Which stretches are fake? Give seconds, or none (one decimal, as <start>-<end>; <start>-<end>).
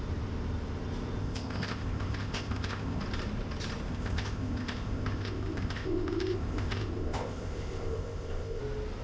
1.2-3.0; 3.9-8.6